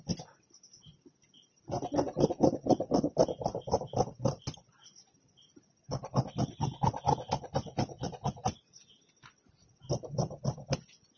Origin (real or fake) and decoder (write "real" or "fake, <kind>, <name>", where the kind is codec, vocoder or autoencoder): real